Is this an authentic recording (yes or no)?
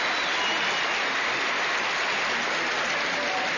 yes